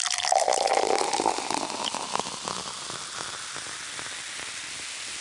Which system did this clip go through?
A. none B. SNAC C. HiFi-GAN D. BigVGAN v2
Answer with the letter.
A